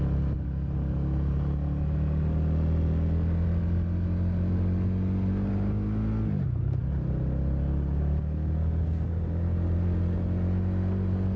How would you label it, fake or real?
real